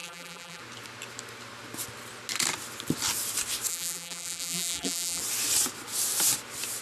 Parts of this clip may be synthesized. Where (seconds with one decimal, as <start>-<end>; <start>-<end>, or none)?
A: 0.0-0.6; 3.7-5.2